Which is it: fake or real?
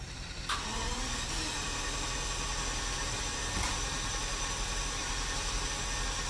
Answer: real